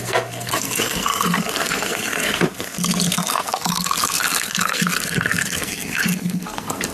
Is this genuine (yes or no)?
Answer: no